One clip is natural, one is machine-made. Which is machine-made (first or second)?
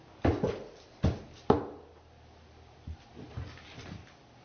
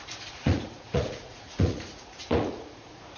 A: second